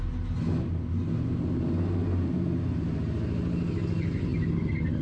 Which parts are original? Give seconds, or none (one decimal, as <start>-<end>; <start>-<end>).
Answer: 0.0-5.0